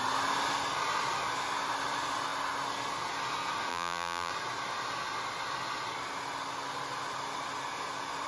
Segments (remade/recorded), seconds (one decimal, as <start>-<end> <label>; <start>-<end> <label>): 0.0-3.7 recorded; 3.7-4.3 remade; 4.3-8.3 recorded